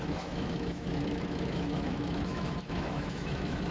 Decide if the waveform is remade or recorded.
remade